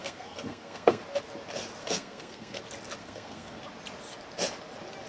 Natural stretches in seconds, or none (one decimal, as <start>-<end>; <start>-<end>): 1.0-1.8; 2.6-3.0; 3.6-5.1